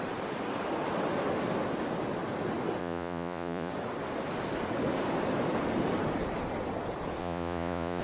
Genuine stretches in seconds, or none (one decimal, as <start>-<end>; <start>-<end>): 0.0-2.8; 3.7-7.2